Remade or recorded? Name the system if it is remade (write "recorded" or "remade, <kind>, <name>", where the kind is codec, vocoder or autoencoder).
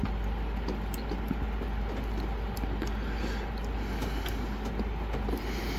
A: recorded